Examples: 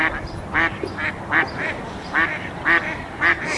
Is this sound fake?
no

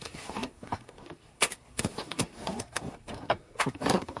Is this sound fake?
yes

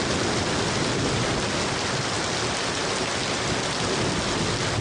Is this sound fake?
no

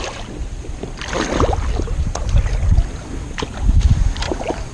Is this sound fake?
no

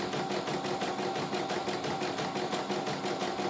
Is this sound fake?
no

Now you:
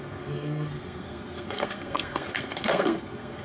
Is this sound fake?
yes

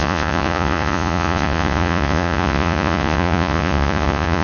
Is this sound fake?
yes